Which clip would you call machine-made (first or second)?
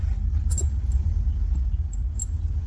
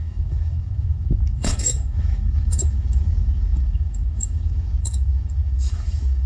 second